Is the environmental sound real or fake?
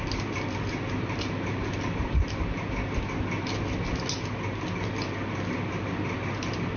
real